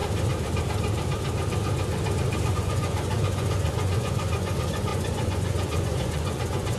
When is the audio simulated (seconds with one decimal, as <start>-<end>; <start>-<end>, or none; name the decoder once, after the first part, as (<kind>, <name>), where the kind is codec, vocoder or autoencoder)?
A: 2.5-6.8 (vocoder, Vocos)

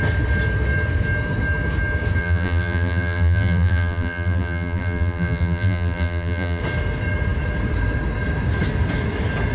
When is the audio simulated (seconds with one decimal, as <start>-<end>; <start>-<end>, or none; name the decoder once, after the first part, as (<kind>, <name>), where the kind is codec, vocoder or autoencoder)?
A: 2.2-6.6 (vocoder, BigVGAN v2)